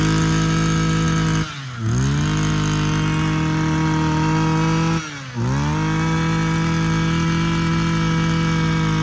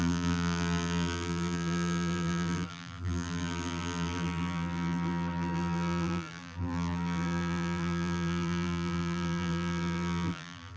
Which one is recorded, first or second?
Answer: first